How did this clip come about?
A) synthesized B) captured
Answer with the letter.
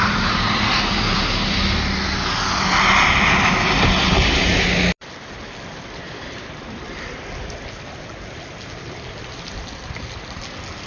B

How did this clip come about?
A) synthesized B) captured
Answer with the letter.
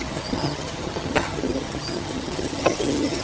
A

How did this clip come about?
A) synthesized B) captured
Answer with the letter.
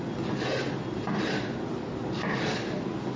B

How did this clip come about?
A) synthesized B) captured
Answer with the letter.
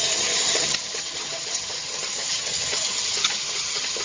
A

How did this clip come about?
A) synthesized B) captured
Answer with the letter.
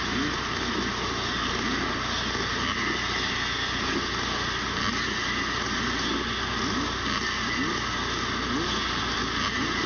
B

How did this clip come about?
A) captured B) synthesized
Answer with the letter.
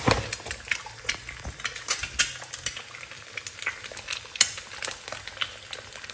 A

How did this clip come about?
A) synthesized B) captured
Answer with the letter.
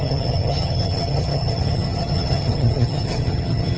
A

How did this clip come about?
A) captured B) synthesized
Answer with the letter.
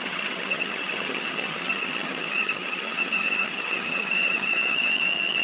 B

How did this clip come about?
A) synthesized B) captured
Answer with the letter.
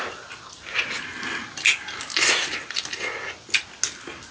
B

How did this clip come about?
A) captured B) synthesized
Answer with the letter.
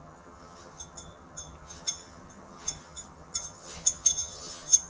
B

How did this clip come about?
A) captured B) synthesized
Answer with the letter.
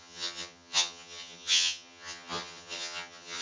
B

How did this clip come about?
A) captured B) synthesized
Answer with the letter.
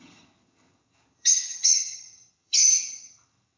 B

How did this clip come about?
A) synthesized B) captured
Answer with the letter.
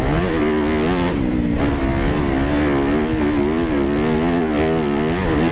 B